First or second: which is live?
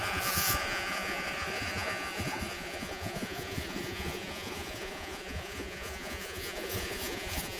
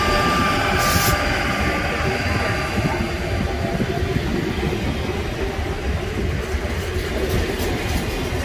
second